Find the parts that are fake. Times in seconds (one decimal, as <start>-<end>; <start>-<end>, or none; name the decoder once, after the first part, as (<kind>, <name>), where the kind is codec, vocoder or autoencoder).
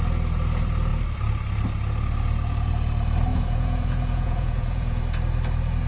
3.3-5.0 (vocoder, Vocos)